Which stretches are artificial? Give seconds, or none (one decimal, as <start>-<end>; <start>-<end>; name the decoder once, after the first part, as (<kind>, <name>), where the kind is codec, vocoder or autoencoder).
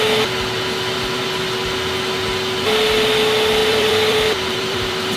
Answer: 3.6-5.2 (vocoder, BigVGAN v2)